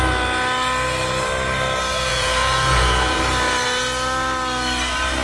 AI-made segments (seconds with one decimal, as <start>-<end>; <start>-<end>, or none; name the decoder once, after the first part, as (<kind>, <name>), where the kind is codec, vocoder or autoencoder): 2.1-3.2 (vocoder, Vocos)